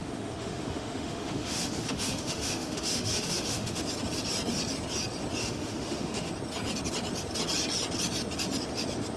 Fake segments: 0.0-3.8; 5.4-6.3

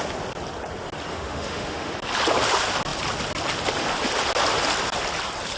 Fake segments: 1.1-1.9

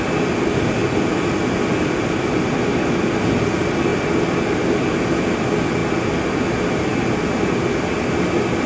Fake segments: none

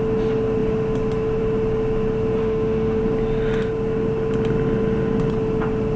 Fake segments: 2.4-3.0

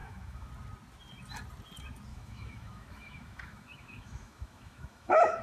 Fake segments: 0.0-0.5; 2.1-5.4

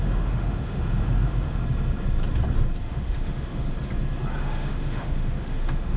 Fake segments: 0.0-1.6; 2.8-3.7; 4.4-6.0

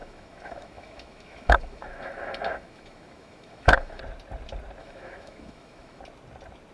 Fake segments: 0.0-4.0; 4.8-6.0

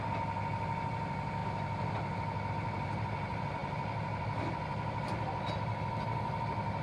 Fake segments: none